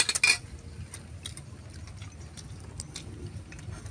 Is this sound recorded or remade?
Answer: recorded